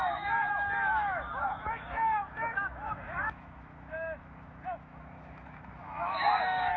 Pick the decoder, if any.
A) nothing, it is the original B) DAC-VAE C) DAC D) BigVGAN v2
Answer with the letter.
B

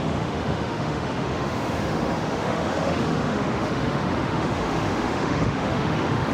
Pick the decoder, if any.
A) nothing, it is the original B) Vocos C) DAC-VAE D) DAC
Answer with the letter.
C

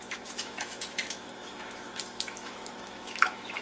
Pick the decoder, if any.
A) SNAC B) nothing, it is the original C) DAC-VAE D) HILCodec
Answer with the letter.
C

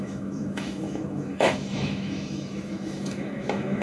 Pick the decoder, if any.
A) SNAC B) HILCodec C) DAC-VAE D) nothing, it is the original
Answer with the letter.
C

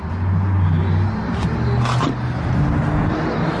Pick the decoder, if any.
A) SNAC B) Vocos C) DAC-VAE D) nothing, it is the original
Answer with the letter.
D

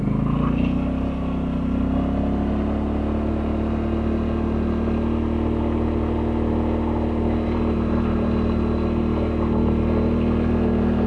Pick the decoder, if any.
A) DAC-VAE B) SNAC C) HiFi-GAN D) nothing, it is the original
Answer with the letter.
D